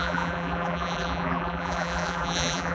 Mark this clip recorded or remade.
remade